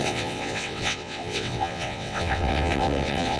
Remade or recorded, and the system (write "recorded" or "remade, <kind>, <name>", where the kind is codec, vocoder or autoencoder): remade, vocoder, WaveNeXt